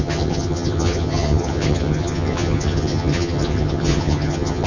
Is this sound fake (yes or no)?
yes